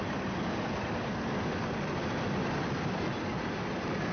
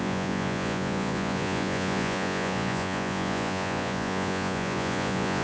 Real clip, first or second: first